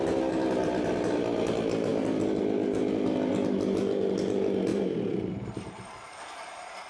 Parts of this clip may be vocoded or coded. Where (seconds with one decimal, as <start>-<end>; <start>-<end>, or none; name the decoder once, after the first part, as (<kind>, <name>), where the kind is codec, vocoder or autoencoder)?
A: 4.7-6.9 (vocoder, BigVGAN v2)